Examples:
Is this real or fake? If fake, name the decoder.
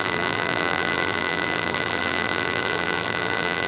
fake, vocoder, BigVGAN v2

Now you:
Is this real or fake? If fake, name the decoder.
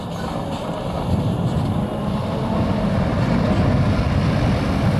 real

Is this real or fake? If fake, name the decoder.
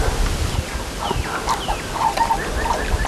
real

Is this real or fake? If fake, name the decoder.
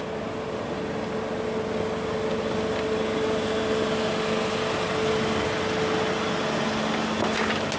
real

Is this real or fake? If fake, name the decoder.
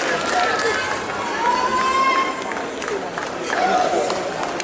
real